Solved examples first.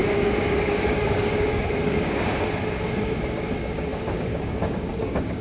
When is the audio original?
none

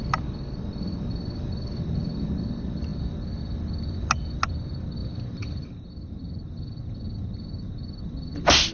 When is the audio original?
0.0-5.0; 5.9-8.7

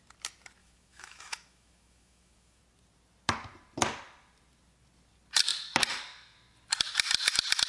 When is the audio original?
0.0-0.6; 2.6-7.7

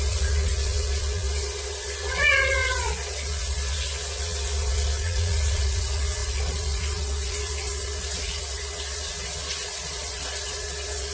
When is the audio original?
none